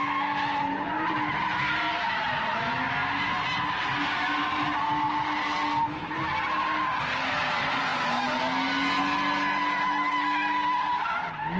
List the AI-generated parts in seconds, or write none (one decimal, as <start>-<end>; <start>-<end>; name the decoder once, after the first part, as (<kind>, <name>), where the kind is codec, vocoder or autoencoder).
none